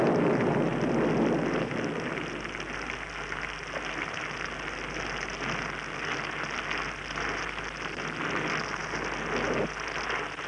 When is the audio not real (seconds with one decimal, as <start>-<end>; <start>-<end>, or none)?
none